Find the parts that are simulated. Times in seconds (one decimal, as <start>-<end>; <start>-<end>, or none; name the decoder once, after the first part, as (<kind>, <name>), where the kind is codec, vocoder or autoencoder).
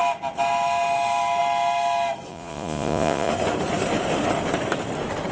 2.3-3.3 (vocoder, Vocos)